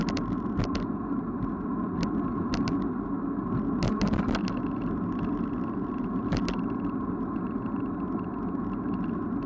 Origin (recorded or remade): recorded